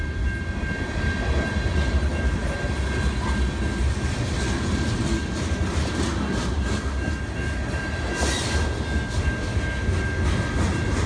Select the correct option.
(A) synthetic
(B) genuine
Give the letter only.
B